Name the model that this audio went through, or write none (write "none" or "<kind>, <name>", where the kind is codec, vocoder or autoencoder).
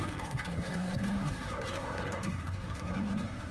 codec, SNAC